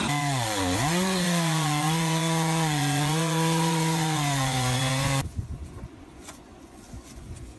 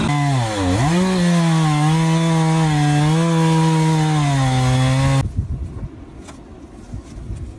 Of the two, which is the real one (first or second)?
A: second